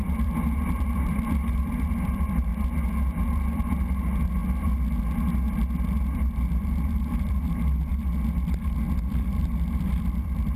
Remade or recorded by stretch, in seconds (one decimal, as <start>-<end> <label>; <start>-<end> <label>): 0.0-2.5 remade; 2.5-3.2 recorded; 3.2-4.4 remade; 4.4-6.5 recorded; 6.5-7.9 remade; 7.9-9.0 recorded; 9.0-10.6 remade